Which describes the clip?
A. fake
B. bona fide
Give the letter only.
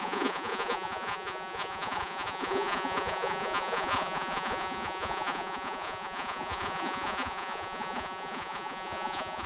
A